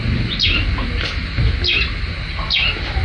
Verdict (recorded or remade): recorded